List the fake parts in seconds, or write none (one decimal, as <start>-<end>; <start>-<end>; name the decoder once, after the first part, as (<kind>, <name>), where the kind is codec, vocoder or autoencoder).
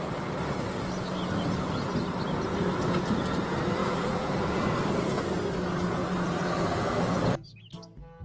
3.8-4.7 (vocoder, BigVGAN v2); 6.0-7.7